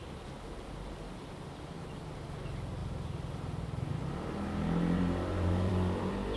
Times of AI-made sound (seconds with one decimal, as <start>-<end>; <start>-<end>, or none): 2.8-5.7